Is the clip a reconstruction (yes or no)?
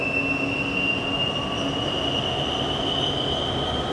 no